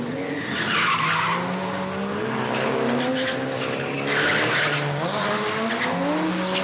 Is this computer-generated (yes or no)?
no